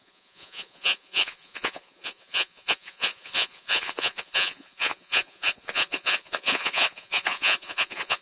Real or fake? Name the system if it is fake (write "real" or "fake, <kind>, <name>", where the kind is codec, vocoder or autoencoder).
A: fake, vocoder, Vocos